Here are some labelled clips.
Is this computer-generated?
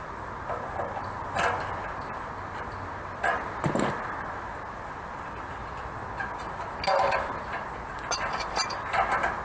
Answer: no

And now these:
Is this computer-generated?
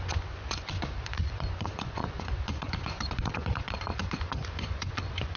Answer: yes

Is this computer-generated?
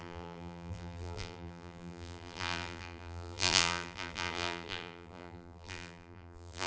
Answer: yes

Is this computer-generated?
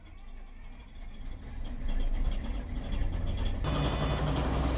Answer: no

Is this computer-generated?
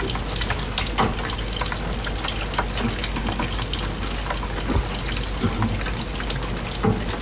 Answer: no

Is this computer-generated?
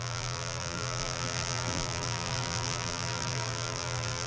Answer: yes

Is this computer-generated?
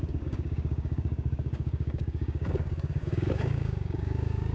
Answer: yes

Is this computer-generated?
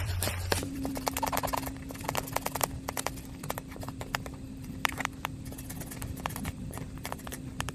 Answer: yes